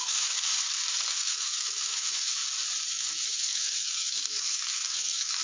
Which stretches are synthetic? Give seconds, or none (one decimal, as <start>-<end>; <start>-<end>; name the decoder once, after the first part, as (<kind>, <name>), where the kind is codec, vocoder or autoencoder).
0.0-0.5 (autoencoder, DAC-VAE); 1.1-2.4; 2.9-5.4